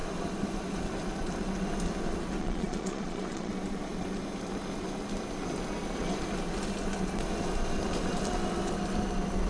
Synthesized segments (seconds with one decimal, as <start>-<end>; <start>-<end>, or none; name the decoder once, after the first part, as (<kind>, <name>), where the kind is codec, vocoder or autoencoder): 2.4-3.5 (vocoder, Vocos)